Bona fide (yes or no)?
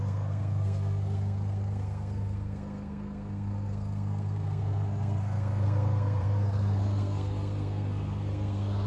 no